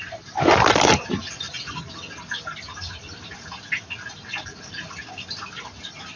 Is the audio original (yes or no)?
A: yes